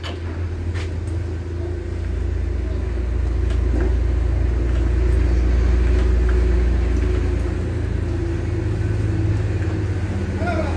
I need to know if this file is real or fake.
real